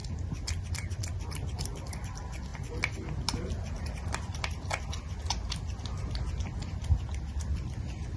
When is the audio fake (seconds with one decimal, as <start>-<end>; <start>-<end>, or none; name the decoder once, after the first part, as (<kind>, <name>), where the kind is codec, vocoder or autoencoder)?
0.0-2.5 (vocoder, BigVGAN v2); 7.4-8.2